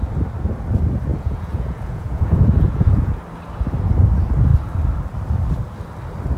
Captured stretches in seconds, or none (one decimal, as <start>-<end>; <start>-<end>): 0.0-1.1; 3.2-6.4